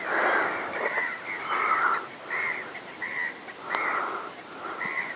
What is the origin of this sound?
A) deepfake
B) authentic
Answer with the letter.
B